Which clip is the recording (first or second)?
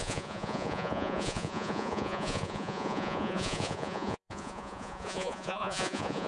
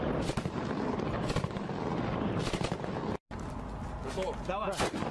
second